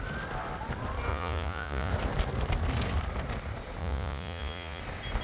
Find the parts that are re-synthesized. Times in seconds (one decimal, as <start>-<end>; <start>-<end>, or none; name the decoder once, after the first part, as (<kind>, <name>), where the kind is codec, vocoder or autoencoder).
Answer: 1.1-1.9 (vocoder, Vocos); 3.8-4.8